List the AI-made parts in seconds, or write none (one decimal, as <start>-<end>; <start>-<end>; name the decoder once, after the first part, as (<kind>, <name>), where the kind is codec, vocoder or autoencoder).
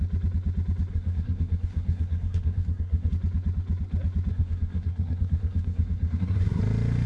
0.9-3.1 (codec, SNAC); 4.3-6.6